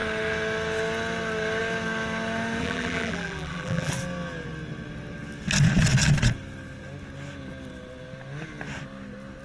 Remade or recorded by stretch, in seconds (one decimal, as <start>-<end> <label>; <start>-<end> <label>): 0.0-2.6 recorded; 2.6-3.9 remade; 3.9-9.4 recorded